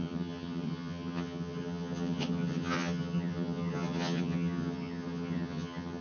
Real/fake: fake